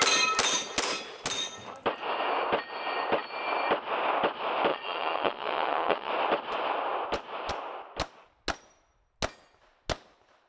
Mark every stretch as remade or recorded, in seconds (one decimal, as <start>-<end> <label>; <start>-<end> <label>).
0.0-4.7 recorded; 4.7-6.1 remade; 6.1-10.5 recorded